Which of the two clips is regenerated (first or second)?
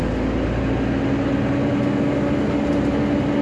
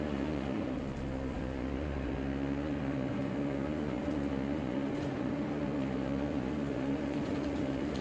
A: second